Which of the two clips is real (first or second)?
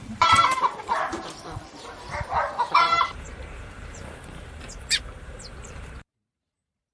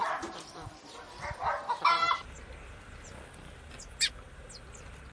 second